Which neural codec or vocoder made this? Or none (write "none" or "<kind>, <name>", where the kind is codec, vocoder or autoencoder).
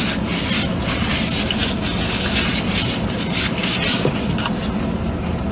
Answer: none